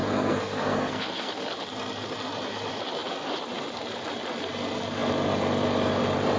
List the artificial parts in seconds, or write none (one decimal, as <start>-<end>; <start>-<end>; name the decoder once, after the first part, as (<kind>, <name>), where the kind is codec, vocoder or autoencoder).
0.0-1.3 (codec, SNAC)